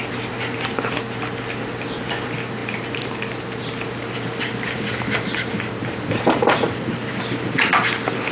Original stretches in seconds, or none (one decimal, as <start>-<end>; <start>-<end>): 0.0-8.3